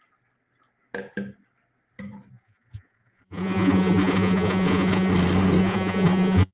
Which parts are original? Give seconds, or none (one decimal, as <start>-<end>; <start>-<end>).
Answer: 0.0-2.3; 5.1-5.6

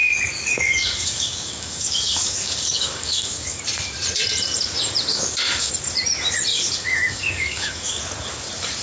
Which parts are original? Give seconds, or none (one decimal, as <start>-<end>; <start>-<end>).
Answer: 3.6-5.1; 5.7-6.5; 8.0-8.8